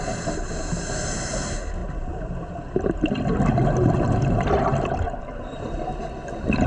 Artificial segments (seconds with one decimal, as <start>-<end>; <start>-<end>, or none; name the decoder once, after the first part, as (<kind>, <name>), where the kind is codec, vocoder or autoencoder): none